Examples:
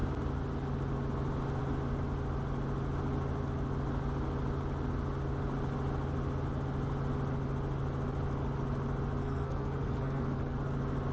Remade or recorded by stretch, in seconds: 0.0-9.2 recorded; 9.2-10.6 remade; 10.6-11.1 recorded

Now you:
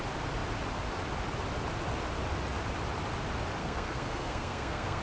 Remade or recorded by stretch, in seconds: 0.0-3.6 recorded; 3.6-5.0 remade